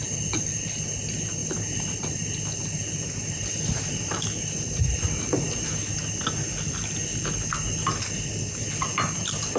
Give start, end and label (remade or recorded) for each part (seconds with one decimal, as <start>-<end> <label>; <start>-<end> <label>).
0.0-1.4 recorded; 1.4-2.0 remade; 2.0-3.0 recorded; 3.0-5.7 remade; 5.7-9.6 recorded